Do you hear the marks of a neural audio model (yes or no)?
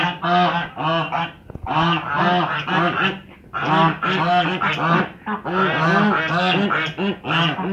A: no